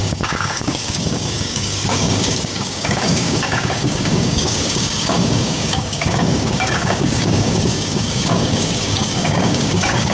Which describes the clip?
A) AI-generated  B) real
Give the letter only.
A